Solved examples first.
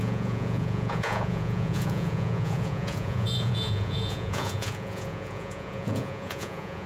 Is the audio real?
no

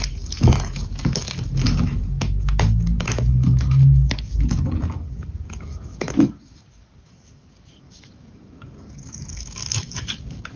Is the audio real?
no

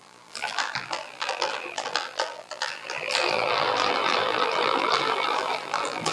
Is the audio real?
no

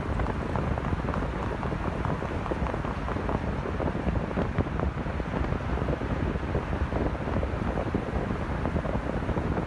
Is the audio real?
yes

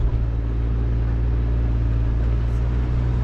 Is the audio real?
yes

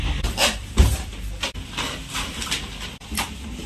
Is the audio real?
no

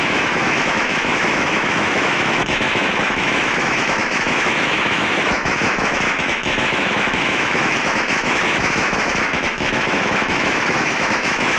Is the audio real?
no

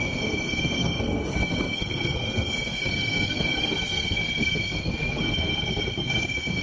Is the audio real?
no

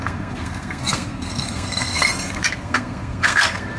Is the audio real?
no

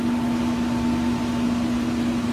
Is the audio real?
yes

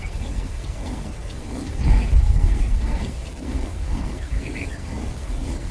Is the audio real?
no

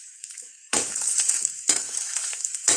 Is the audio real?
no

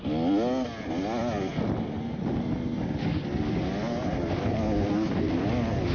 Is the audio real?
yes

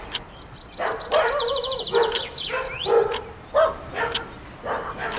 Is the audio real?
yes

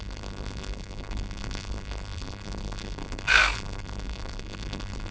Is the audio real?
no